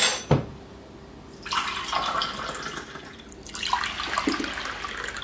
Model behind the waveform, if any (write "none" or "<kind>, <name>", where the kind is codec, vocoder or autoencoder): none